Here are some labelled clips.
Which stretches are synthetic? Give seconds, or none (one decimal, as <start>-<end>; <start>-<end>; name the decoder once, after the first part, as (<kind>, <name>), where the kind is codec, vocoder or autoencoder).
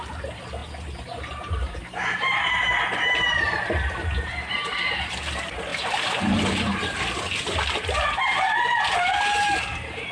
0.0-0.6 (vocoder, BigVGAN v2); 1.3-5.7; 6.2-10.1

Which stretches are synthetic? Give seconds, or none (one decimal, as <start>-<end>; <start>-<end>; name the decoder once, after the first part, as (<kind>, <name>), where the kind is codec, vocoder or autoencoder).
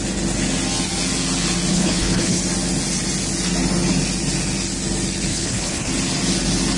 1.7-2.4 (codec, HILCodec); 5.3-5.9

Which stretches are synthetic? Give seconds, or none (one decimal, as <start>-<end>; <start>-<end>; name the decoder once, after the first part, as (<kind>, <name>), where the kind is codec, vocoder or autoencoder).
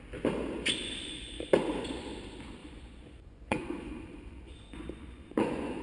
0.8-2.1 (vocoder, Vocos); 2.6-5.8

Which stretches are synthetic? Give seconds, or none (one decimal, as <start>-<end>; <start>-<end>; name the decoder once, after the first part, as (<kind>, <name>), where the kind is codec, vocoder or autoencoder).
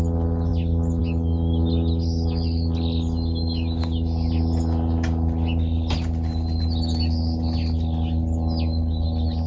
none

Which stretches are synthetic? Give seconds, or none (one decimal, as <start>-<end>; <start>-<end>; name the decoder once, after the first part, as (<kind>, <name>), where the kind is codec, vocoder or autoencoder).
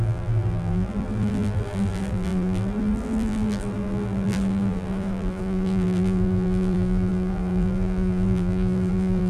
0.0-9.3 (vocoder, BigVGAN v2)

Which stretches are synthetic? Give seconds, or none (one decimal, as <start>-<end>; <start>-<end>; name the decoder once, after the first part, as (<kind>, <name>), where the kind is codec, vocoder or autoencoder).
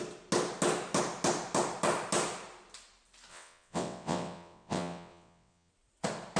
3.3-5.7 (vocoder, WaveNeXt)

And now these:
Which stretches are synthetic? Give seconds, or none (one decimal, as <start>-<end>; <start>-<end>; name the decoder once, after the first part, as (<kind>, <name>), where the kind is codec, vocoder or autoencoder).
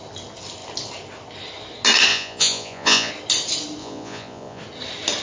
2.1-3.1 (vocoder, Vocos); 3.8-4.6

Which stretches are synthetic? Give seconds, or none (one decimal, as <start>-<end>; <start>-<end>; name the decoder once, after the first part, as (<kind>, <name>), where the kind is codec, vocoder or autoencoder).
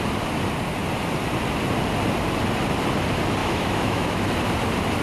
3.4-4.2 (autoencoder, DAC-VAE)